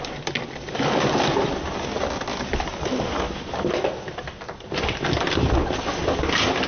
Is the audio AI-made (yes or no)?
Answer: no